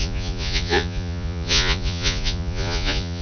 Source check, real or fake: fake